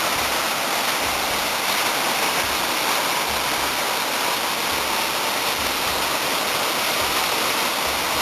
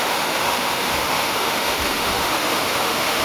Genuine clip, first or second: first